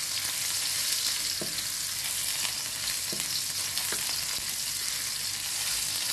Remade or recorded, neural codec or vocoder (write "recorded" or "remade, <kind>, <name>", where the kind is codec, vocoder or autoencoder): recorded